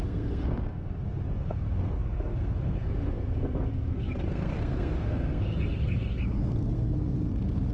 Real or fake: fake